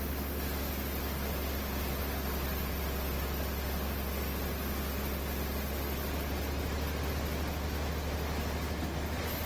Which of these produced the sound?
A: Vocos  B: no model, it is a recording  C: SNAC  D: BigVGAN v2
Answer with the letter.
B